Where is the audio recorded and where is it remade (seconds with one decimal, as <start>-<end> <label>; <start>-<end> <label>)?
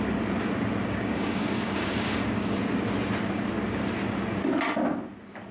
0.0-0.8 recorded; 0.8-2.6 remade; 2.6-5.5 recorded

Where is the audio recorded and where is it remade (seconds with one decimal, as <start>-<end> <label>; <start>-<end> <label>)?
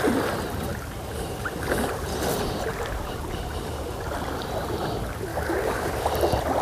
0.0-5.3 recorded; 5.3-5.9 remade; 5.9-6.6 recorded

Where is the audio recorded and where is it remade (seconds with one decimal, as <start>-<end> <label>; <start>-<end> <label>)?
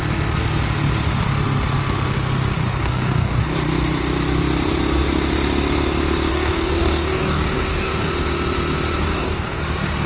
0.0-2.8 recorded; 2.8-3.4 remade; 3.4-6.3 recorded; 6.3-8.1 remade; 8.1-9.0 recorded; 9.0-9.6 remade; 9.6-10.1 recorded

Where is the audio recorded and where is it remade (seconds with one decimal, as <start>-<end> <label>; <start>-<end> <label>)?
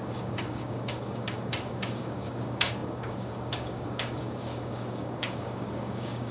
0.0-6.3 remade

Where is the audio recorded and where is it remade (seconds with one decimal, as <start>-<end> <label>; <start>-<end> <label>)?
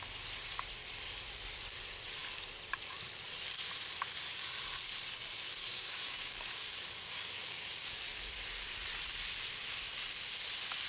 0.0-5.6 recorded; 5.6-8.3 remade; 8.3-10.9 recorded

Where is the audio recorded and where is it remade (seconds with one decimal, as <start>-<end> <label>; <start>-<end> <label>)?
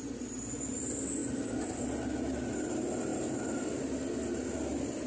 0.0-5.1 recorded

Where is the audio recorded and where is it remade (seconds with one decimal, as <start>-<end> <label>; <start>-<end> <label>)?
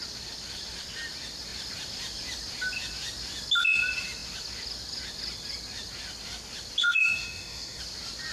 0.0-6.8 recorded; 6.8-7.8 remade; 7.8-8.3 recorded